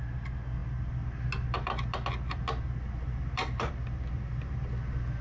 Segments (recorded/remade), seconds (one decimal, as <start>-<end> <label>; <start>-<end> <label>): 0.0-5.2 recorded